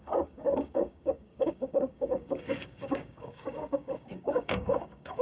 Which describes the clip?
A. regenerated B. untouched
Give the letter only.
A